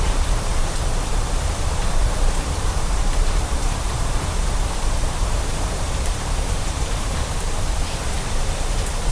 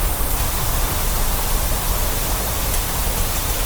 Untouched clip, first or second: second